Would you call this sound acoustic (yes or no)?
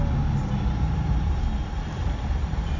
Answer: yes